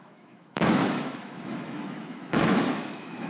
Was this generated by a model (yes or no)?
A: yes